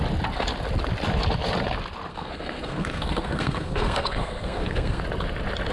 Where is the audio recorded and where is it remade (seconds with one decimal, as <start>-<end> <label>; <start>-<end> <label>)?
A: 0.0-2.1 recorded; 2.1-5.0 remade; 5.0-5.7 recorded